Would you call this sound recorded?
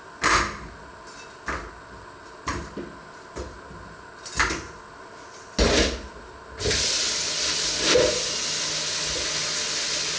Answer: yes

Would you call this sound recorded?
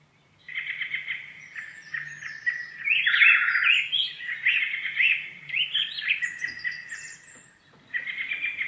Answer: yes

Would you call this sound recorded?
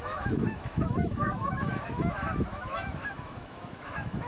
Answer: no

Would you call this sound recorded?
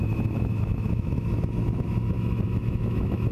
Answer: no